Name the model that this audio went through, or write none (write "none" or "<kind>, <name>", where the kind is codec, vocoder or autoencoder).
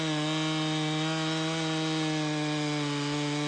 none